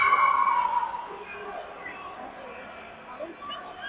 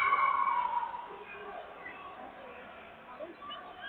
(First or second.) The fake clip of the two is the second